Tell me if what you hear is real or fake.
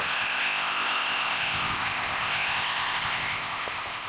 fake